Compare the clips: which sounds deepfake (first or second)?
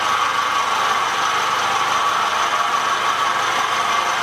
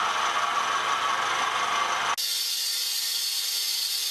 first